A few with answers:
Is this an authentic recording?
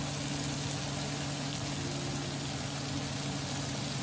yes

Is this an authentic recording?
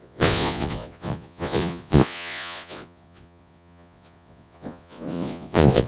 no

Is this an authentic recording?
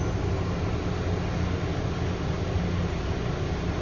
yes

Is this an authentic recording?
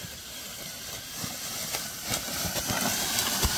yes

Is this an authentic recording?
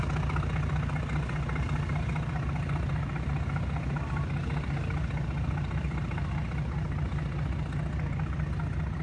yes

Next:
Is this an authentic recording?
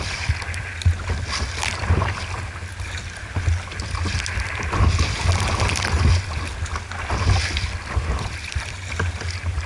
yes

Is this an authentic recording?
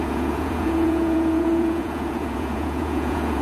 no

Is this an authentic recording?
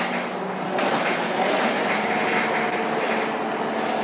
yes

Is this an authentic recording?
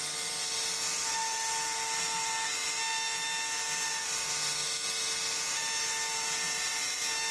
yes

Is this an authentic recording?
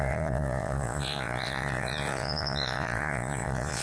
no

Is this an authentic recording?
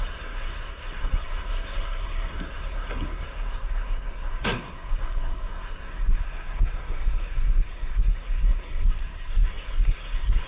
no